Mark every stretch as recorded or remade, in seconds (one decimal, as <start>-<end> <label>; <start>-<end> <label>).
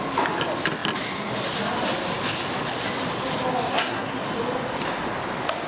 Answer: 0.0-3.7 recorded; 3.7-4.2 remade; 4.2-5.7 recorded